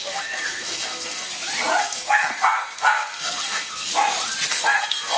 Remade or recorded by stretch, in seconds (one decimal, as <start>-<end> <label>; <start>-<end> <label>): 0.0-1.3 remade; 1.3-1.8 recorded; 1.8-3.9 remade; 3.9-4.5 recorded; 4.5-5.2 remade